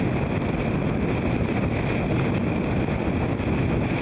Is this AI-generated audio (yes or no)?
no